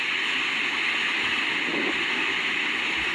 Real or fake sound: real